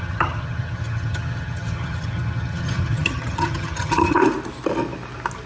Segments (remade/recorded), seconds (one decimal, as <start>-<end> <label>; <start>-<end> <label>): 0.0-4.2 remade; 4.2-5.5 recorded